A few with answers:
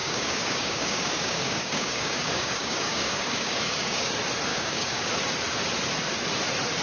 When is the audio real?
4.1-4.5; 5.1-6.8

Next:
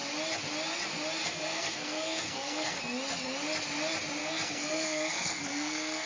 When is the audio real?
0.0-1.2; 2.8-4.2

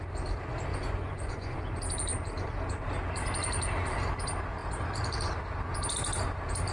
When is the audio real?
0.0-0.7; 1.6-6.7

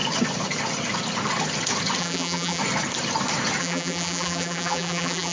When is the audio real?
0.0-2.0; 2.6-3.6

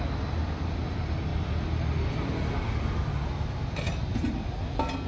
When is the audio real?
0.0-5.1